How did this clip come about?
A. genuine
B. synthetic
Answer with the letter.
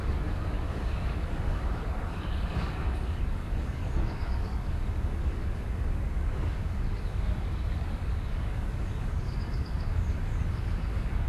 B